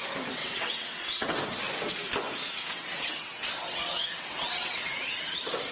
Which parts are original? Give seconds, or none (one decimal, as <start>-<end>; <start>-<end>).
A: 0.0-0.4; 1.4-2.4; 5.3-5.7